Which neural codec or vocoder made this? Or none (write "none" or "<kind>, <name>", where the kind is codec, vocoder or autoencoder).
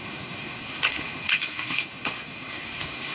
codec, SNAC